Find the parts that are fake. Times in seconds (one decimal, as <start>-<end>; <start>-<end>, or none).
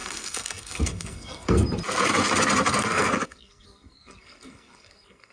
0.0-1.6; 2.7-5.3